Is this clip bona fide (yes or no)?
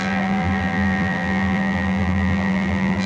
no